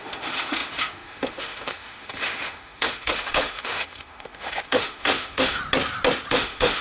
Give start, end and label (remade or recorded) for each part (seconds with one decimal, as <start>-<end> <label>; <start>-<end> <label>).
0.0-5.6 remade; 5.6-6.3 recorded; 6.3-6.8 remade